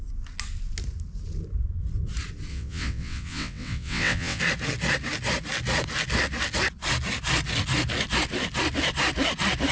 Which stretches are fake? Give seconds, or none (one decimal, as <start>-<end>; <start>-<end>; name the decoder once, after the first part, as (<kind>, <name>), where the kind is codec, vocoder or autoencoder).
2.5-4.4 (vocoder, WaveNeXt)